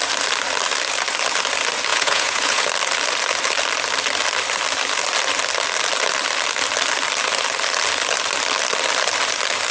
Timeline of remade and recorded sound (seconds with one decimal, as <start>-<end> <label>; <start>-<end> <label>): 0.0-1.9 recorded; 1.9-2.7 remade; 2.7-9.7 recorded